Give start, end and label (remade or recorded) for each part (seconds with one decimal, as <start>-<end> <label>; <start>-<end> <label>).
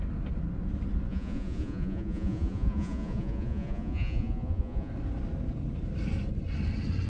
0.0-1.1 recorded; 1.1-4.9 remade; 4.9-7.1 recorded